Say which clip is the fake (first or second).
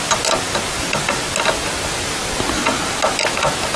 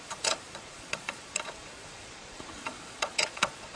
second